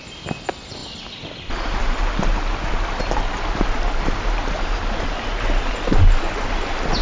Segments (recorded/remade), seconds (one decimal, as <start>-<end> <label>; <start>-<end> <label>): 0.0-7.0 recorded